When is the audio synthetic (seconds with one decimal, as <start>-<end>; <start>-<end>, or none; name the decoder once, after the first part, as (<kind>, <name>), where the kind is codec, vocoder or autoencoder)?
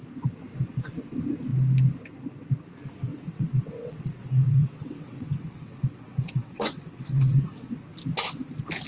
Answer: 3.1-7.8 (vocoder, WaveNeXt)